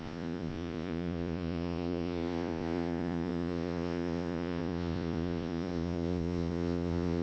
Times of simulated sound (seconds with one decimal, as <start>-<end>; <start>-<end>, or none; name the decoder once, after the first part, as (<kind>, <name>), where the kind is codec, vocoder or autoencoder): 0.0-7.2 (vocoder, Vocos)

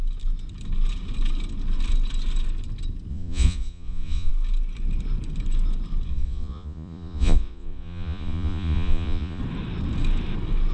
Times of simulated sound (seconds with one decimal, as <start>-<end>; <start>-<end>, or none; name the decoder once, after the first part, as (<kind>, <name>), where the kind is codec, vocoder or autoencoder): 3.1-4.3 (vocoder, Vocos); 6.1-9.4

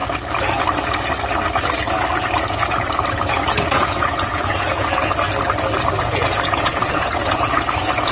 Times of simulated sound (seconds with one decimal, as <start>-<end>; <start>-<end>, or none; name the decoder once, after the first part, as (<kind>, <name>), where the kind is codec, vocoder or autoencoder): 3.5-5.0 (vocoder, Vocos); 6.0-8.1

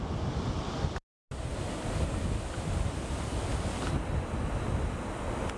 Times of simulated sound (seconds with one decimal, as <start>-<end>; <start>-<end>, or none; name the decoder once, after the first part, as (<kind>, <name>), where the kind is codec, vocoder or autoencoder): none

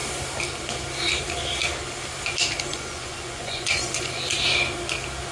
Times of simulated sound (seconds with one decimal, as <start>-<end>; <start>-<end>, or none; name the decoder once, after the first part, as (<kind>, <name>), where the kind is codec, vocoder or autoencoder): 2.7-4.2 (vocoder, Vocos)

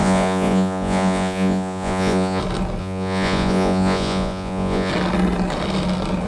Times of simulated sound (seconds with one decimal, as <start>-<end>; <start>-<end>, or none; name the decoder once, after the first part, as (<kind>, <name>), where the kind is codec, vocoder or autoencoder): 0.0-2.4 (vocoder, Vocos); 2.8-4.9

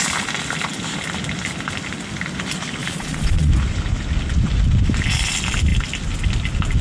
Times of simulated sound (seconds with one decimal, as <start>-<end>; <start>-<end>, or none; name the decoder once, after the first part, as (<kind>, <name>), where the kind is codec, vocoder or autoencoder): 2.8-3.5 (vocoder, Vocos)